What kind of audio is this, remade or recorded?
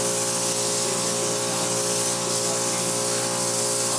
recorded